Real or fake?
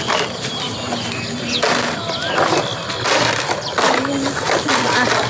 real